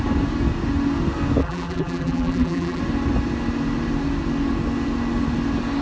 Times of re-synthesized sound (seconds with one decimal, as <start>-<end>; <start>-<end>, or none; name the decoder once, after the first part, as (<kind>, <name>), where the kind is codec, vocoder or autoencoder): 1.4-2.8 (vocoder, BigVGAN v2)